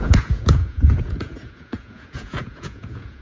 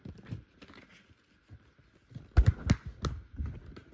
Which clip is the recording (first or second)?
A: second